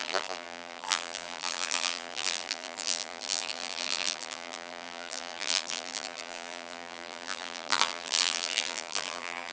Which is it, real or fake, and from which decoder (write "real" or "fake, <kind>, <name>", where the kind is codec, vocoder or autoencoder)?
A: fake, vocoder, BigVGAN v2